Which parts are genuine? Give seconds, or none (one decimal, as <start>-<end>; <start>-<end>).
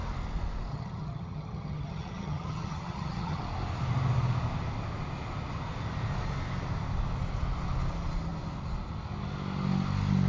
0.0-0.7; 3.4-10.3